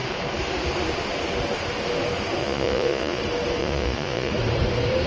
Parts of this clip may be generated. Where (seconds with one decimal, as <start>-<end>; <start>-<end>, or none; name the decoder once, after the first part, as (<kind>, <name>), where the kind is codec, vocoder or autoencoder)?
2.4-3.2 (vocoder, Vocos); 3.6-4.3